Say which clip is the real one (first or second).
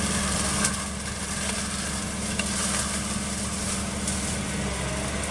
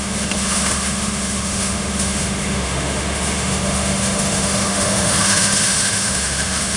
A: first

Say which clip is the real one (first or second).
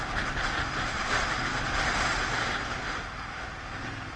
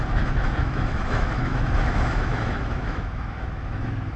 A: first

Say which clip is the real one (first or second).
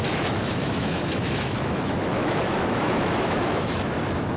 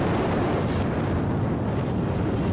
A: second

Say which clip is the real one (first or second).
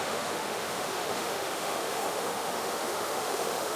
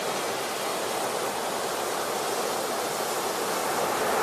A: second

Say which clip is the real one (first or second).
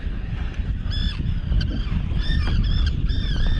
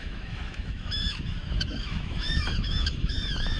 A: first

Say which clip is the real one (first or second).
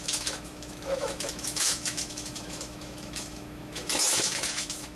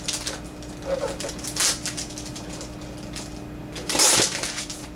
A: second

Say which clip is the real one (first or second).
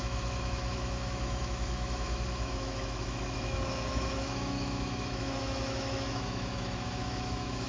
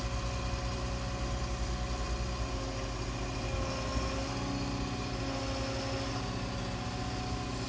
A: second